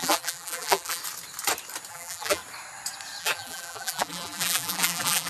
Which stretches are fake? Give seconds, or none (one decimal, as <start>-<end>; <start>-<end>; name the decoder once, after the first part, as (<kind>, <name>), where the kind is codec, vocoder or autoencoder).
0.0-1.0 (vocoder, BigVGAN v2); 1.9-2.4; 3.2-5.3